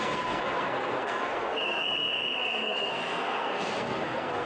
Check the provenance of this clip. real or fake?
fake